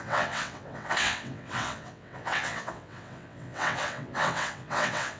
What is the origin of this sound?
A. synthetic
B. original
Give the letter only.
A